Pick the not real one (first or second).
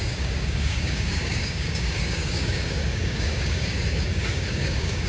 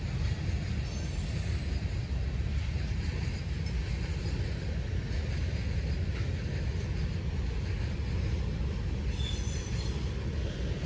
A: first